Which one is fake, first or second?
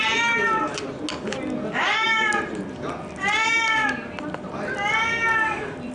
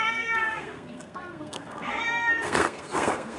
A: second